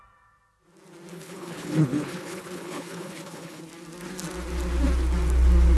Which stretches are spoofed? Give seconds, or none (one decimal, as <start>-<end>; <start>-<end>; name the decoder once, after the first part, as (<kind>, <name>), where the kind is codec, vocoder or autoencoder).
1.1-3.6 (codec, HILCodec)